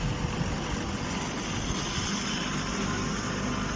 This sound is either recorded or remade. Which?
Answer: recorded